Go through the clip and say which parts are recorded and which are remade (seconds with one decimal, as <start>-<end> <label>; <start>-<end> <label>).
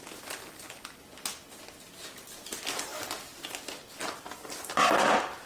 0.0-4.0 recorded; 4.0-5.1 remade; 5.1-5.5 recorded